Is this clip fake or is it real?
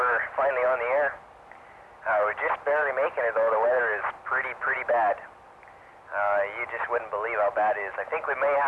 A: real